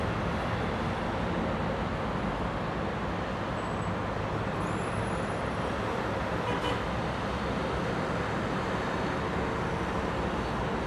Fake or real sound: real